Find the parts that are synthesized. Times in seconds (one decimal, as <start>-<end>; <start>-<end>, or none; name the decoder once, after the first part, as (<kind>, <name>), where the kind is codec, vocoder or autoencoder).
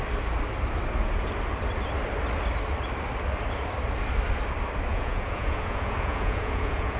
4.9-7.0 (vocoder, Vocos)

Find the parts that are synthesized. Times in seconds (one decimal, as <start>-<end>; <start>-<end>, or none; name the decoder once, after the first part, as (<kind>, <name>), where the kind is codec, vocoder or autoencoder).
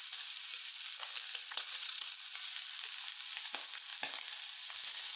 1.4-2.1 (vocoder, Vocos)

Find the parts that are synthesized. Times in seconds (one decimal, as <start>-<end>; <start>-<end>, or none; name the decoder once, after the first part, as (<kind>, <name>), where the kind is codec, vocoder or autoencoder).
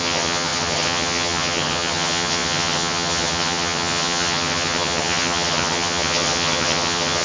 0.0-7.2 (vocoder, HiFi-GAN)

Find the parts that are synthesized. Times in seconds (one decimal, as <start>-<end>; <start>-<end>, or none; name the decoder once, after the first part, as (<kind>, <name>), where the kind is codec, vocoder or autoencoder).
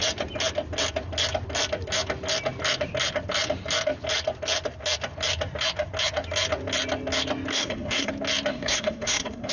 7.5-8.1 (codec, SNAC); 8.5-9.5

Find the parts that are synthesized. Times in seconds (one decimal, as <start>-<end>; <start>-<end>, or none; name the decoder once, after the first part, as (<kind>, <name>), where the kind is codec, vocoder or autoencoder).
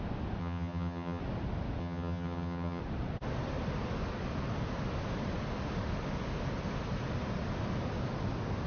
0.4-1.2 (vocoder, HiFi-GAN); 1.8-2.8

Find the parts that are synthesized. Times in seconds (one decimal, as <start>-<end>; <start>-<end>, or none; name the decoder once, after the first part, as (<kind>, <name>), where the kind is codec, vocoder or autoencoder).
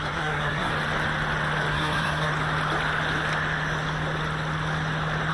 0.0-0.7 (codec, SNAC); 1.7-2.3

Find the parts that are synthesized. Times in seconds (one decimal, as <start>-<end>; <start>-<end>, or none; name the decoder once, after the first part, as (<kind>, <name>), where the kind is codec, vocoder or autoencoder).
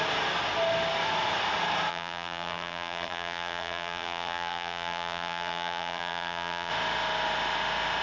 1.9-6.7 (vocoder, BigVGAN v2)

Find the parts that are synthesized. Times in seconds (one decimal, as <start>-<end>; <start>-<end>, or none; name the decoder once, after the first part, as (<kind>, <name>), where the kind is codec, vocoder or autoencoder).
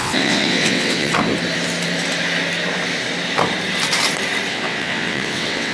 0.0-1.1 (vocoder, WaveNeXt); 4.5-5.7